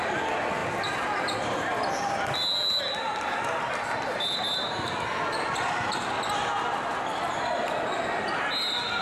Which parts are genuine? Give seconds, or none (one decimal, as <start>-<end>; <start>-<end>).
0.0-9.0